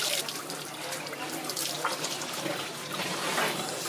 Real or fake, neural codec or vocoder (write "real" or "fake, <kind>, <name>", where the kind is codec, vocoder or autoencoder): fake, vocoder, BigVGAN v2